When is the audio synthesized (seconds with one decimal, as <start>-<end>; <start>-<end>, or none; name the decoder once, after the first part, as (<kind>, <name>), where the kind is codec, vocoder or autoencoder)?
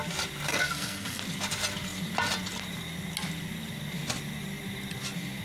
0.5-1.2 (codec, SNAC)